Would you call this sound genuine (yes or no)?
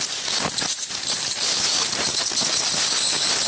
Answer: yes